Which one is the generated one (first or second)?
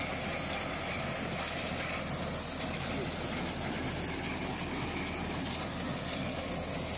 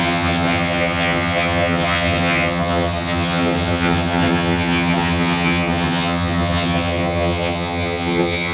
second